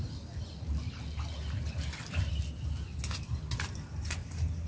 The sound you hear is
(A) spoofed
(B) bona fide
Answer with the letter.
B